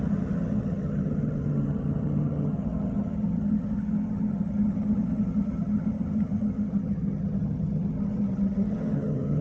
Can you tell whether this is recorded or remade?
remade